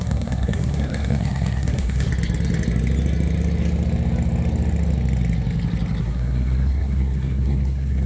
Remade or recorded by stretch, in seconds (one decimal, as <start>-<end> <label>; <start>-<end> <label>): 0.0-2.1 remade; 2.1-6.0 recorded; 6.0-8.1 remade